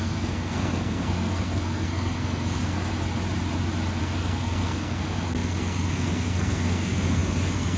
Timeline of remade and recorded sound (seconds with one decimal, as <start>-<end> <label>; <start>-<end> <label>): 0.0-2.9 remade; 2.9-4.0 recorded; 4.0-7.8 remade